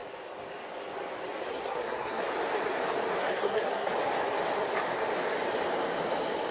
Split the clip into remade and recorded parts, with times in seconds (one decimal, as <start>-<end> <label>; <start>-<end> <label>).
0.0-1.5 recorded; 1.5-2.2 remade; 2.2-3.2 recorded; 3.2-3.9 remade; 3.9-6.5 recorded